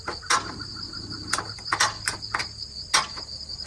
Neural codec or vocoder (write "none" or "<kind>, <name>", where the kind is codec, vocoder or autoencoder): none